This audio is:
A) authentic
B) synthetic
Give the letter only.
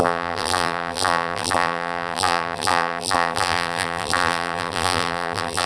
B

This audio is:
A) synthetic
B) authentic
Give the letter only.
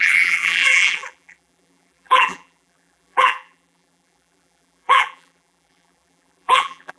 A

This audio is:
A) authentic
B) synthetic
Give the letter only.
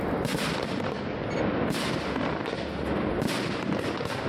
A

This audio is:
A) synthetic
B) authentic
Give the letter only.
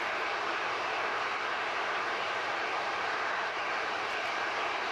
A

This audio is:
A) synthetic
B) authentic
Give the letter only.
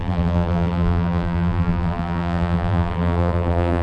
A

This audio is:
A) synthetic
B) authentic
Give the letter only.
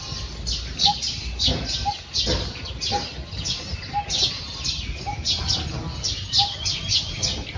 B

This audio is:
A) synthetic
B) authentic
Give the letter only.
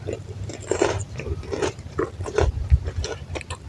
A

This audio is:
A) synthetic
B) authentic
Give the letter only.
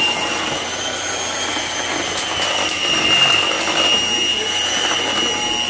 B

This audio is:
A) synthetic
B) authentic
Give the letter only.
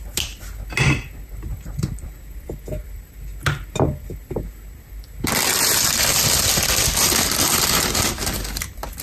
B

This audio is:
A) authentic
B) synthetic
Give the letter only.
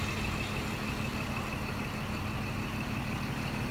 A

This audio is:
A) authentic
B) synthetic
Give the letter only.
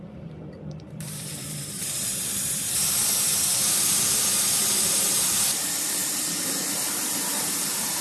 B